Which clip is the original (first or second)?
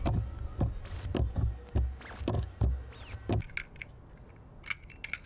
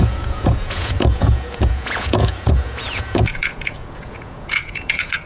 first